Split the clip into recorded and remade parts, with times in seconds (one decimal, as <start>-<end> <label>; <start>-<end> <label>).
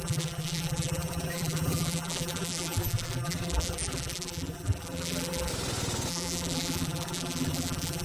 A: 0.0-5.5 remade; 5.5-6.1 recorded; 6.1-8.0 remade